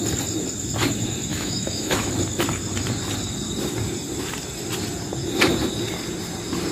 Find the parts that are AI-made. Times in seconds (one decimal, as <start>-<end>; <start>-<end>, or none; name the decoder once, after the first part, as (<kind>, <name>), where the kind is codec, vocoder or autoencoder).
1.3-2.1 (autoencoder, DAC-VAE)